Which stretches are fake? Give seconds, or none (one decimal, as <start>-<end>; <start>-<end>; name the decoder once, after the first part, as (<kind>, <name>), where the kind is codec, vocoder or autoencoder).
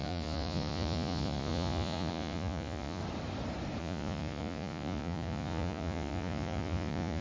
0.0-3.0 (vocoder, Vocos); 3.8-7.2